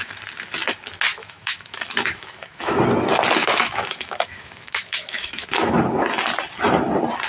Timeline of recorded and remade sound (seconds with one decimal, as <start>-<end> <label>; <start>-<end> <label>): 0.0-1.2 recorded; 1.2-2.8 remade; 2.8-3.4 recorded; 3.4-5.7 remade; 5.7-7.3 recorded